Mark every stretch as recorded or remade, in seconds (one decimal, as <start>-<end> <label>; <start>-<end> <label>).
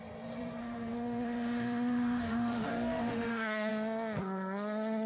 0.0-0.6 recorded; 0.6-3.7 remade; 3.7-5.1 recorded